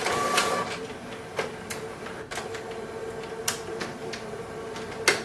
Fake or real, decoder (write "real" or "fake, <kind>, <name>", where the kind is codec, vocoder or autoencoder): real